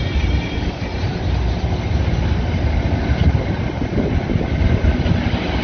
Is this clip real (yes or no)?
yes